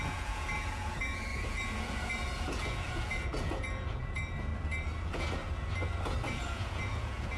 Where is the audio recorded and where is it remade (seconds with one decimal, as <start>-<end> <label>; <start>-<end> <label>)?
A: 0.0-4.5 remade; 4.5-5.0 recorded; 5.0-5.4 remade; 5.4-6.3 recorded; 6.3-7.4 remade